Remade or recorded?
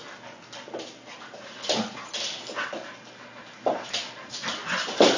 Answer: recorded